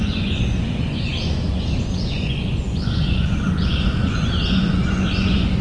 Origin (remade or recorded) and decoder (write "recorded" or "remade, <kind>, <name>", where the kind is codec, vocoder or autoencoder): remade, vocoder, Vocos